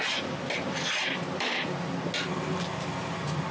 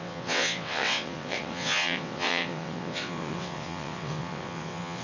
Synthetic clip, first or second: second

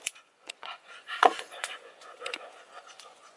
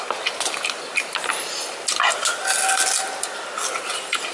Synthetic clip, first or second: first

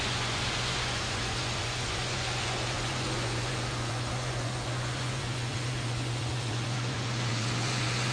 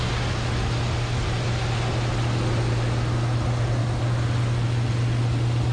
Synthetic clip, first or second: first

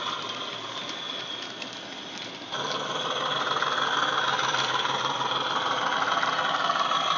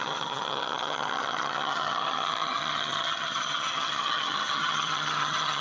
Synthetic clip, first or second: second